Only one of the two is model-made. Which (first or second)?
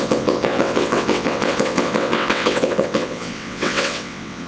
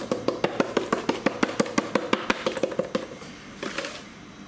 first